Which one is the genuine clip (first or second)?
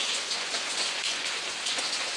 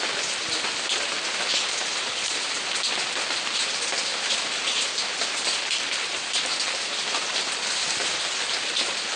second